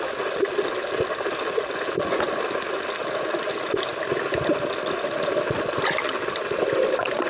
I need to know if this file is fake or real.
real